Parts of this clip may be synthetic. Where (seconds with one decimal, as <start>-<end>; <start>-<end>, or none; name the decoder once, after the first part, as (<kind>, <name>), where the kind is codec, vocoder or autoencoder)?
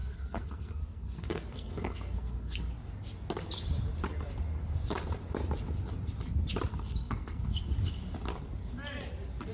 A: 0.0-2.7 (codec, SNAC); 6.7-7.7